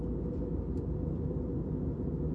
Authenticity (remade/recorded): recorded